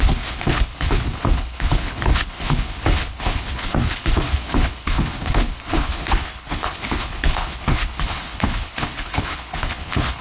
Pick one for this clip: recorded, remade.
remade